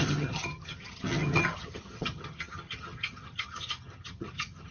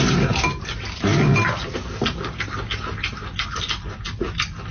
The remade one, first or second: first